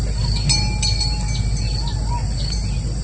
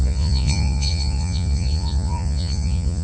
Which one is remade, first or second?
second